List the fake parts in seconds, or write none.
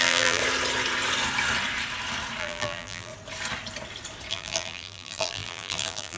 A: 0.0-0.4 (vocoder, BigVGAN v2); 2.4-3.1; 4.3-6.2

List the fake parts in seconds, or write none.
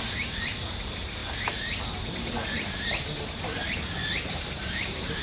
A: 0.0-1.2 (vocoder, BigVGAN v2); 4.3-5.2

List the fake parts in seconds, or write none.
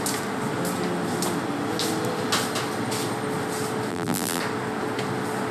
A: 3.9-4.4 (vocoder, BigVGAN v2)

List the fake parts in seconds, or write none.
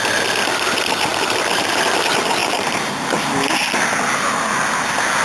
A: 1.1-1.8 (vocoder, BigVGAN v2); 2.4-3.1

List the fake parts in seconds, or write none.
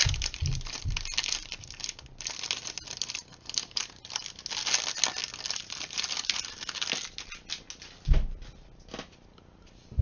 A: 0.0-0.8 (vocoder, BigVGAN v2)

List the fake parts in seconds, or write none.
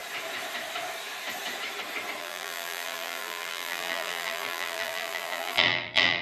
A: 2.2-6.2 (vocoder, BigVGAN v2)